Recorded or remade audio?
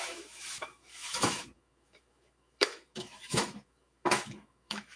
remade